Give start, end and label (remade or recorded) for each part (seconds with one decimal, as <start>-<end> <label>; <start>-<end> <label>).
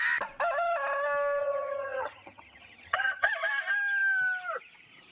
0.0-1.4 recorded; 1.4-3.3 remade; 3.3-5.1 recorded